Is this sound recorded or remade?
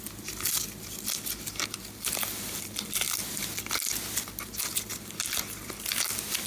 recorded